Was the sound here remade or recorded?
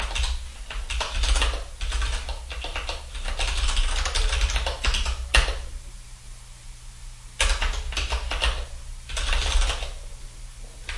recorded